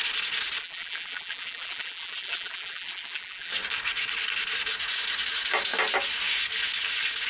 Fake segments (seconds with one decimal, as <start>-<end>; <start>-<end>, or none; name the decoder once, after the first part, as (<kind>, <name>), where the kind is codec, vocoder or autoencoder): 0.6-3.5 (vocoder, BigVGAN v2)